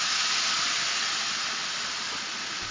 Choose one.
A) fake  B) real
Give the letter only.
B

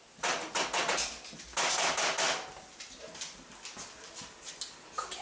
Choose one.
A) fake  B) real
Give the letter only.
B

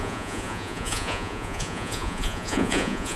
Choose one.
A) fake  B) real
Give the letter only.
A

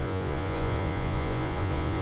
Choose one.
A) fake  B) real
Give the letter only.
A